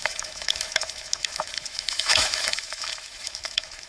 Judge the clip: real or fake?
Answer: fake